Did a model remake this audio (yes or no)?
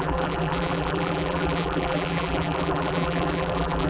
yes